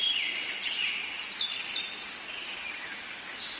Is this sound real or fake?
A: real